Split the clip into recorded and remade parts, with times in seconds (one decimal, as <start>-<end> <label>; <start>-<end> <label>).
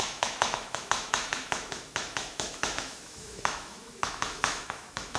0.0-5.2 remade